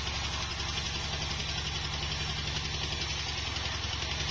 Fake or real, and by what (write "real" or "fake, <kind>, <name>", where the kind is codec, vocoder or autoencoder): real